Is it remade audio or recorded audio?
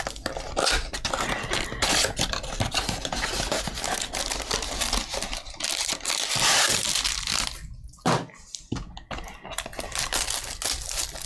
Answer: recorded